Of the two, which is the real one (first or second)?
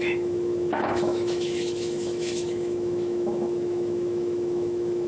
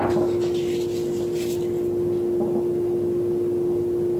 second